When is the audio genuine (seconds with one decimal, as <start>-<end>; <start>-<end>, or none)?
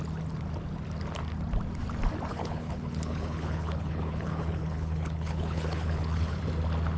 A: 0.0-2.3; 6.4-7.0